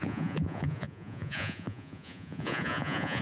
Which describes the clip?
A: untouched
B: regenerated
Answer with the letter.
B